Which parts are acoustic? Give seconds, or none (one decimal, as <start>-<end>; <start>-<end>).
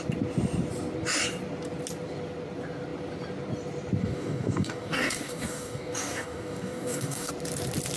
0.0-4.0; 7.3-8.0